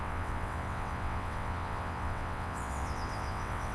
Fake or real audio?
fake